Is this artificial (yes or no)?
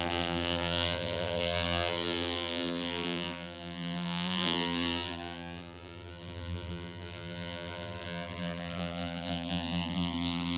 yes